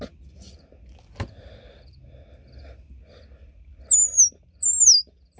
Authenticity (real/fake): real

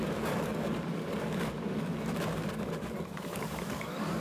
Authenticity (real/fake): fake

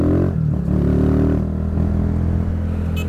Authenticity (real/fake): real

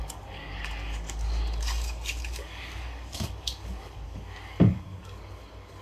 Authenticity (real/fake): fake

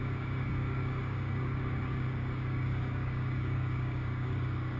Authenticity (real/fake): fake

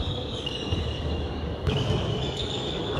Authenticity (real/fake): fake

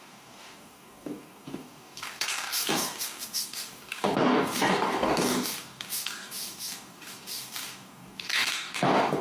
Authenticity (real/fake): fake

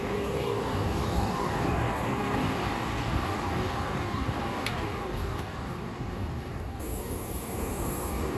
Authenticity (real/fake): fake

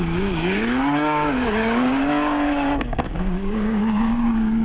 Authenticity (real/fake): fake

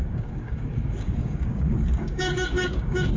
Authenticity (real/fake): fake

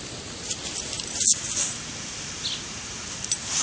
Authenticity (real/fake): real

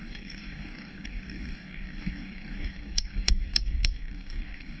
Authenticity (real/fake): fake